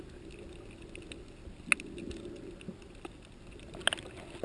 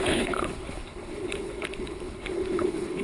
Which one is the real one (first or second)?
first